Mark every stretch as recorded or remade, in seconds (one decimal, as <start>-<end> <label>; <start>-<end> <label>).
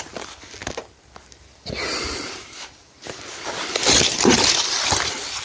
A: 0.0-5.4 recorded